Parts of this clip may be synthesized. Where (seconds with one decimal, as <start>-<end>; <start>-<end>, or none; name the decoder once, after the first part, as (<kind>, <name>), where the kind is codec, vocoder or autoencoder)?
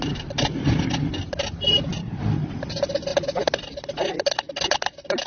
none